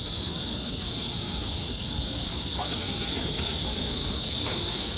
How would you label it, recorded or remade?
remade